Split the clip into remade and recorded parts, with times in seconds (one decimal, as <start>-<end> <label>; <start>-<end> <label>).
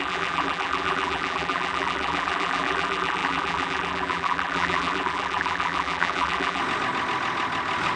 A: 0.0-6.6 remade; 6.6-8.0 recorded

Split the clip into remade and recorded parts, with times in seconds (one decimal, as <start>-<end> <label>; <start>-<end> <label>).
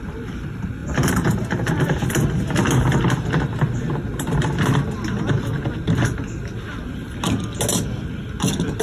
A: 0.0-0.8 recorded; 0.8-1.7 remade; 1.7-8.8 recorded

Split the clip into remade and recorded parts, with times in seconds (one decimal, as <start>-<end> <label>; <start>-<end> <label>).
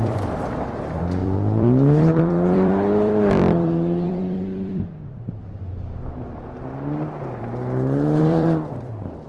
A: 0.0-5.4 remade; 5.4-8.2 recorded; 8.2-9.3 remade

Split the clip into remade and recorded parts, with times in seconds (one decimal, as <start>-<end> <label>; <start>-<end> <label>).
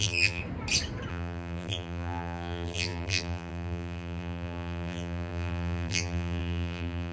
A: 0.0-0.4 remade; 0.4-1.1 recorded; 1.1-7.1 remade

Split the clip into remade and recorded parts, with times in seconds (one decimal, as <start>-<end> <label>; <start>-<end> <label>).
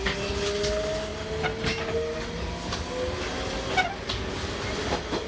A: 0.0-4.4 recorded; 4.4-5.3 remade